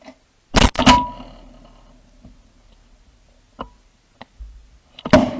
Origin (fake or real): real